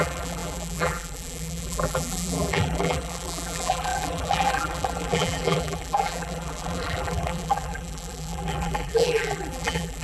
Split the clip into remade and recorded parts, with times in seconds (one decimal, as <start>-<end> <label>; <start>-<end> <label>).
0.0-10.0 remade